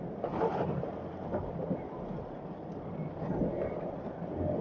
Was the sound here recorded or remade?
recorded